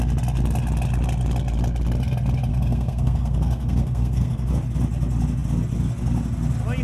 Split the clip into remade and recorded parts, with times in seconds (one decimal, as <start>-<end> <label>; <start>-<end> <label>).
0.0-2.5 recorded; 2.5-4.5 remade; 4.5-6.8 recorded